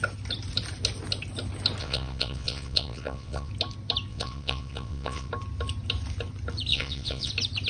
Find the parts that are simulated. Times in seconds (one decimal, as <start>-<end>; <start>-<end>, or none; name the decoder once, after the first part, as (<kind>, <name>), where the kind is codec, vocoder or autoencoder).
1.8-3.5 (vocoder, WaveNeXt); 4.1-5.3; 6.7-7.3